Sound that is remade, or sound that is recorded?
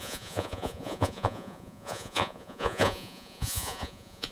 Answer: remade